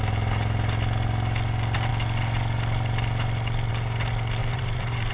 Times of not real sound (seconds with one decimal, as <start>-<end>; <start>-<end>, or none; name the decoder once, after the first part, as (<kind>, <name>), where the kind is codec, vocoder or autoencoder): 4.4-5.1 (vocoder, BigVGAN v2)

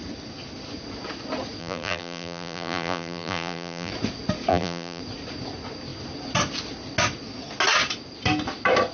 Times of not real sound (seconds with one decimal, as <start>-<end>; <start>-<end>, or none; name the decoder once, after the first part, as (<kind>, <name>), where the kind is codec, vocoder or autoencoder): 1.6-3.9 (vocoder, BigVGAN v2); 4.5-5.0

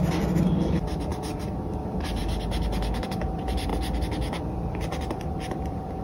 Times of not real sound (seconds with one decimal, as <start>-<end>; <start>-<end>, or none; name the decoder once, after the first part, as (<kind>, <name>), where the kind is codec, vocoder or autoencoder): 0.0-1.1 (vocoder, BigVGAN v2); 1.7-2.2; 3.0-3.7; 4.4-6.0

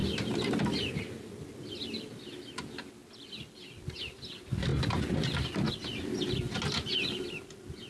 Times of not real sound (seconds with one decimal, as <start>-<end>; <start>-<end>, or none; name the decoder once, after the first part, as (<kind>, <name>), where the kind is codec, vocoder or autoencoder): none

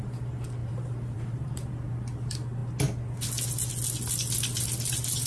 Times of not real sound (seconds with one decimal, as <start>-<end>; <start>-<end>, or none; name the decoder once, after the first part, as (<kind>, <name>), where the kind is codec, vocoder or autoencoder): 0.6-1.7 (vocoder, BigVGAN v2)